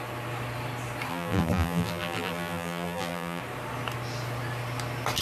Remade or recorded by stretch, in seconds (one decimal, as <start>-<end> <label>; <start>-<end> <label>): 0.0-1.1 recorded; 1.1-3.4 remade; 3.4-5.2 recorded